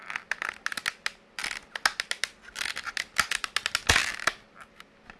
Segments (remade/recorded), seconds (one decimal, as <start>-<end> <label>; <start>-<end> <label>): 0.0-5.2 recorded